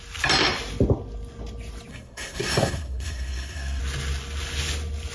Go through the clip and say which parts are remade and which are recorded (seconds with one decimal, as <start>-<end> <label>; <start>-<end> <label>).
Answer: 0.0-1.9 recorded; 1.9-3.8 remade; 3.8-5.1 recorded